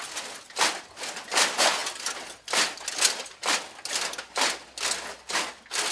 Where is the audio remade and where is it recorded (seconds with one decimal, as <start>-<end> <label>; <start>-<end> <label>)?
0.0-5.9 recorded